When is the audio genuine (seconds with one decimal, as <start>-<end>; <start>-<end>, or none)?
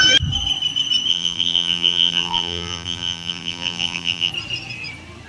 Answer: 0.0-1.1; 4.3-5.3